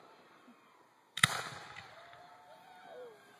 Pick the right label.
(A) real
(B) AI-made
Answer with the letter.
A